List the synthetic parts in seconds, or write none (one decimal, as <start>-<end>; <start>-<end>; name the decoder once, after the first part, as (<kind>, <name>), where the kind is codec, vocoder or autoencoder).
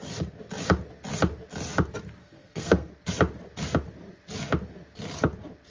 2.2-2.9 (codec, SNAC)